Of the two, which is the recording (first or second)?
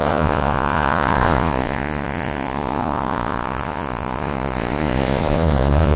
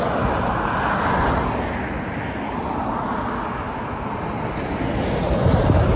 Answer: second